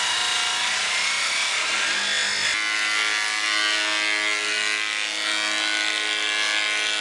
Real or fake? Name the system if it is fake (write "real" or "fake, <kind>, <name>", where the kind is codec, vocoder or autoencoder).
real